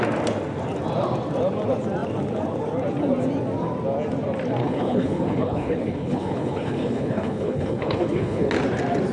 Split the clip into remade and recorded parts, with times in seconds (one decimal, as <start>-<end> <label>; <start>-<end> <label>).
0.0-4.6 recorded; 4.6-8.5 remade; 8.5-9.1 recorded